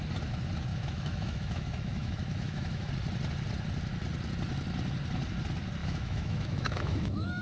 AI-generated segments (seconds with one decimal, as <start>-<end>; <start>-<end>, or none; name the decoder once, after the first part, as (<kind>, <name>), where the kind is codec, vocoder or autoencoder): 0.7-2.9 (autoencoder, DAC-VAE); 5.8-7.4